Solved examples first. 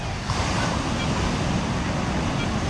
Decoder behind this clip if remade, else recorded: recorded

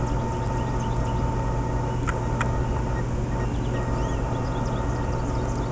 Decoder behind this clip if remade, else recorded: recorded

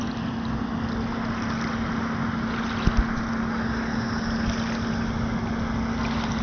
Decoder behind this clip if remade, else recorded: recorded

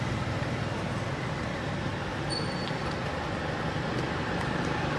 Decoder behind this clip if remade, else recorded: recorded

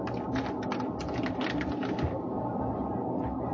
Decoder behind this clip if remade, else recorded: recorded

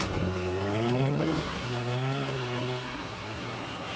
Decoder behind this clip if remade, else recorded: remade, codec, SNAC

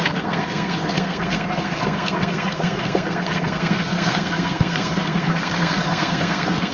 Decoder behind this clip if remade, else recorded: remade, codec, SNAC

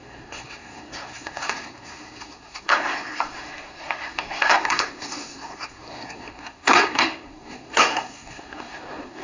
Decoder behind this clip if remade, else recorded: remade, codec, SNAC